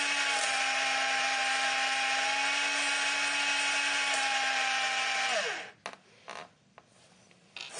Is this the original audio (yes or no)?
yes